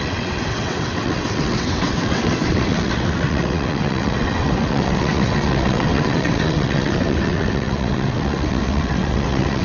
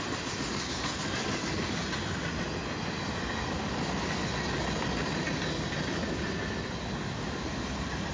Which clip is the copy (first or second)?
first